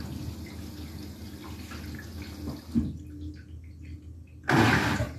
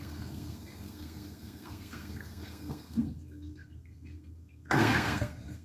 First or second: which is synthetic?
second